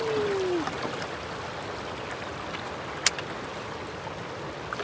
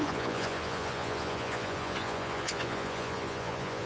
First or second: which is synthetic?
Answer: second